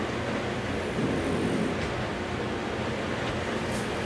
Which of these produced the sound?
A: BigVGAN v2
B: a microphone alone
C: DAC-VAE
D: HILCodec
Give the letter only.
B